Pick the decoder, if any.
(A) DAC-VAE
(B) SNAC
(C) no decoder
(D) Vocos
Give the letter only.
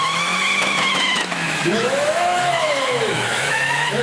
A